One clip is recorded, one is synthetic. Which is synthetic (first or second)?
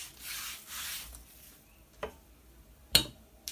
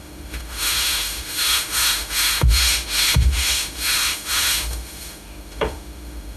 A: second